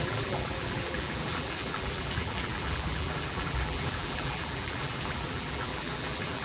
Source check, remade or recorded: remade